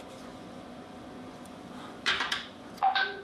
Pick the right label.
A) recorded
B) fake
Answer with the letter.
B